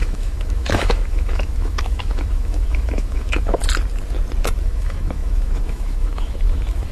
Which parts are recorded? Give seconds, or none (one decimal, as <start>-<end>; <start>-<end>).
3.6-4.6